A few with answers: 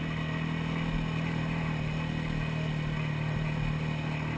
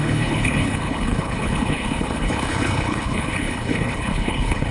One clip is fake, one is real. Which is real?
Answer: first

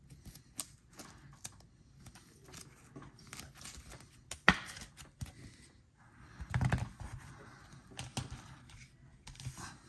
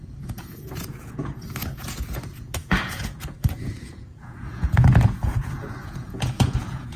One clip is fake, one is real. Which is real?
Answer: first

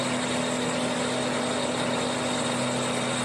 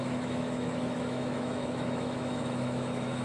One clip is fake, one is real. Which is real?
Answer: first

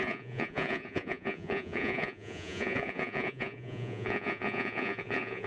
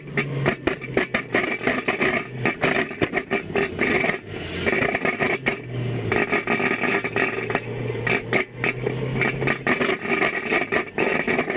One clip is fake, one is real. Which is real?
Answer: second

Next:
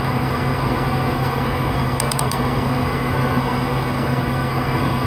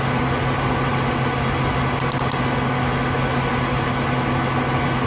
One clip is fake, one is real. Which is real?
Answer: second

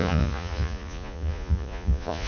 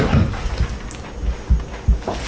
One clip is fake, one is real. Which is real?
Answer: second